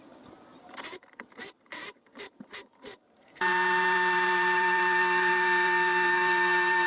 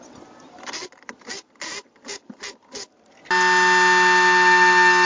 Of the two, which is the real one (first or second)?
second